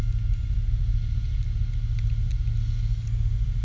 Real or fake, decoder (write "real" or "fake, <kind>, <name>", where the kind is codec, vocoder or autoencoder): real